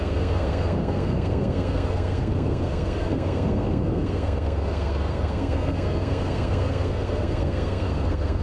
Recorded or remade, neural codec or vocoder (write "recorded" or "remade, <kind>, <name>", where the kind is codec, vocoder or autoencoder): remade, codec, SNAC